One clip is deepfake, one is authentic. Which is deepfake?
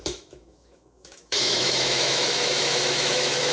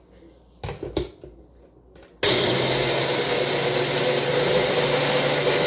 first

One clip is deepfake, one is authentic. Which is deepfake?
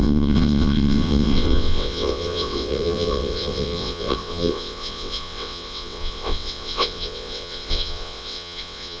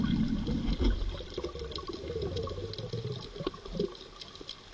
first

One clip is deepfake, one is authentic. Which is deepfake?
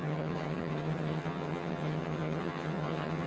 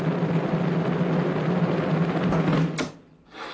first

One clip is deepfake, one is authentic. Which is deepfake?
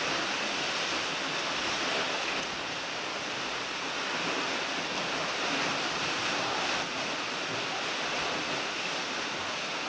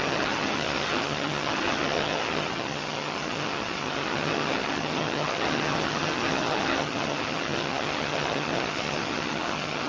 second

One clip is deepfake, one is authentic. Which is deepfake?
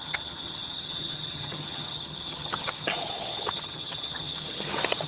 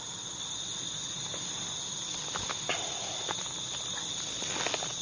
first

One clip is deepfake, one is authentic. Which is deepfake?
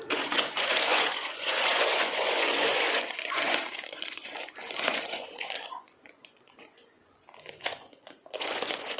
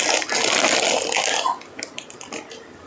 first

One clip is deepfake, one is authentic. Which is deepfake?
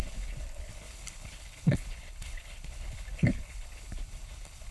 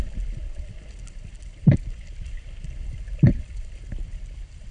first